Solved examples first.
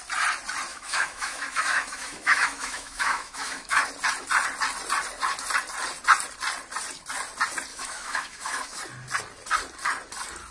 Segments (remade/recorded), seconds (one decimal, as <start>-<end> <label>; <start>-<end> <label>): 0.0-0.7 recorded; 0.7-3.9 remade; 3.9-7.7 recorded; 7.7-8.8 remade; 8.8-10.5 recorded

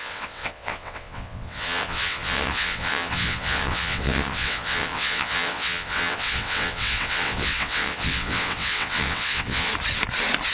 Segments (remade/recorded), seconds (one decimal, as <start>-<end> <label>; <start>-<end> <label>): 0.0-9.7 remade; 9.7-10.5 recorded

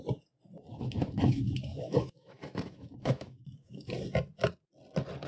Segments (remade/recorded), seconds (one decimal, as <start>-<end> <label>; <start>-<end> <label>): 0.0-0.7 recorded; 0.7-3.9 remade; 3.9-5.3 recorded

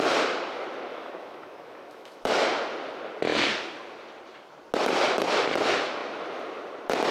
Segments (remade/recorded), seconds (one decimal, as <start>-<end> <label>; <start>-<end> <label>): 0.0-0.9 recorded; 0.9-2.3 remade; 2.3-7.1 recorded

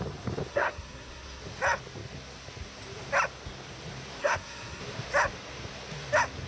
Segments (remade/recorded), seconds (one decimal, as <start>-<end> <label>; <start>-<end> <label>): 0.0-0.5 recorded; 0.5-1.4 remade; 1.4-4.2 recorded; 4.2-4.8 remade; 4.8-6.5 recorded

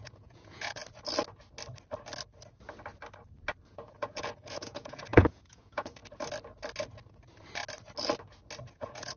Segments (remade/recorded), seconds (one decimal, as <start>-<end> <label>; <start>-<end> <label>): 0.0-0.8 remade; 0.8-3.7 recorded; 3.7-6.0 remade; 6.0-8.7 recorded; 8.7-9.2 remade

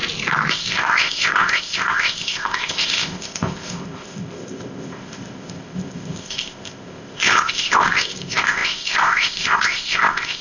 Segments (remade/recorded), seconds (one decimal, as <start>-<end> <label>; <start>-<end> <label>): 0.0-0.5 recorded; 0.5-10.4 remade